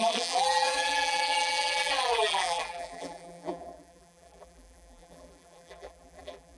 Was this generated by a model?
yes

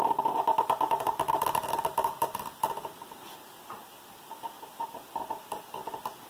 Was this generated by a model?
no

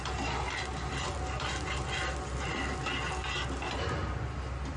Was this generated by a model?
no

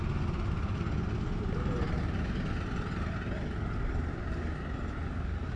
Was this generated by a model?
no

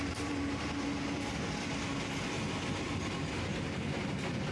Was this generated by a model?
no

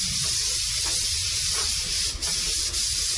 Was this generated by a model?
yes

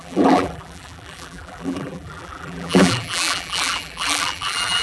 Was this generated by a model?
yes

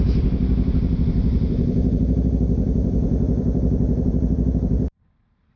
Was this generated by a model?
yes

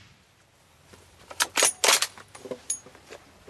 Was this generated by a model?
yes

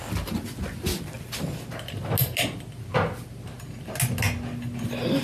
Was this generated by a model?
no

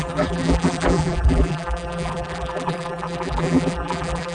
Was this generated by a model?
yes